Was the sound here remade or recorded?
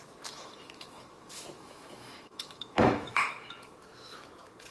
remade